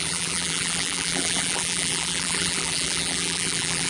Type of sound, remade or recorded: remade